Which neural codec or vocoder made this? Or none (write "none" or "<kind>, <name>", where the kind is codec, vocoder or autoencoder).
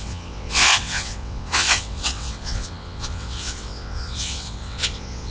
vocoder, WaveNeXt